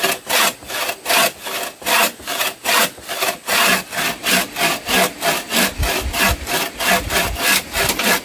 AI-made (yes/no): no